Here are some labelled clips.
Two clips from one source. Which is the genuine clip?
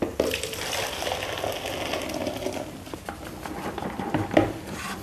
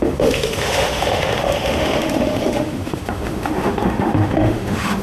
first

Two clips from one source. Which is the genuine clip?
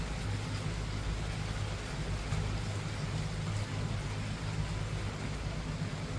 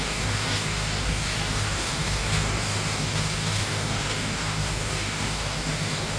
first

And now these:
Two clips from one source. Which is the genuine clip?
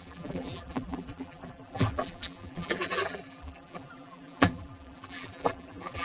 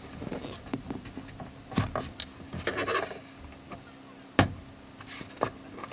second